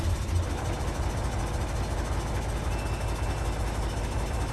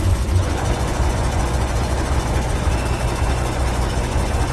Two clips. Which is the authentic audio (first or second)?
first